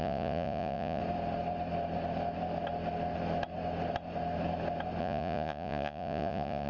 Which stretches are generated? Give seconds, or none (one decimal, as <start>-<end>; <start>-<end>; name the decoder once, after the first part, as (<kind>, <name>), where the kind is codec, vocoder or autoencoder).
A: 0.0-1.0 (vocoder, Vocos); 5.0-6.7